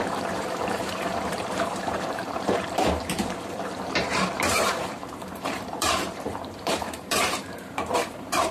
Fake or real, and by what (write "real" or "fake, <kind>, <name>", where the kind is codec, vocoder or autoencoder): fake, vocoder, BigVGAN v2